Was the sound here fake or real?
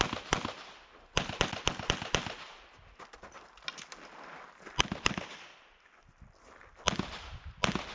real